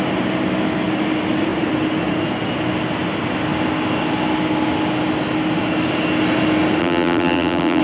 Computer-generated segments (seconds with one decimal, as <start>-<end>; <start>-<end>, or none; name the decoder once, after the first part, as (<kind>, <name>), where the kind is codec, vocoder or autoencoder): 6.8-7.8 (vocoder, BigVGAN v2)